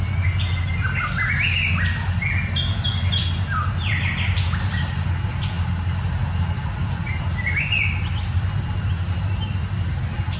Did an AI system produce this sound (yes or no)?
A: no